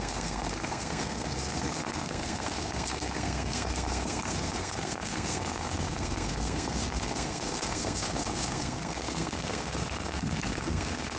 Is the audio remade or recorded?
remade